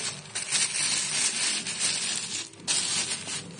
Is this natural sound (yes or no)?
yes